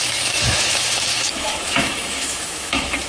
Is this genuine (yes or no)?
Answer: no